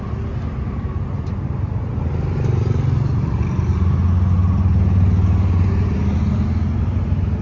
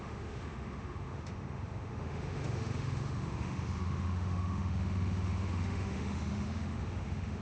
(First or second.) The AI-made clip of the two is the second